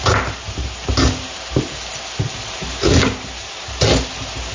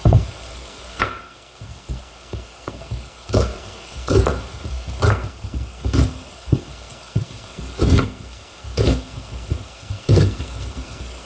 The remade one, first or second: second